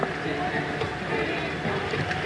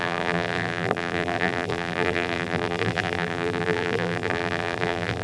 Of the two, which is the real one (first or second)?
first